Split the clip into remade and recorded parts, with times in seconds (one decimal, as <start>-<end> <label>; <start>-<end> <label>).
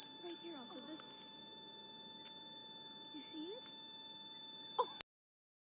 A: 0.0-5.6 recorded